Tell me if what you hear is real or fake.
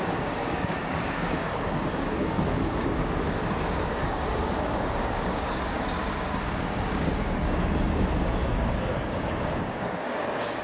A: fake